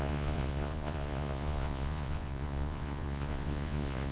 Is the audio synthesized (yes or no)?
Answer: yes